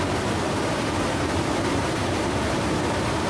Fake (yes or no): yes